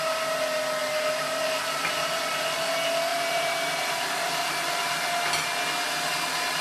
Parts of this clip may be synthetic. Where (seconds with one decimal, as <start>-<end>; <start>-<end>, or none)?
0.8-1.9; 3.1-3.9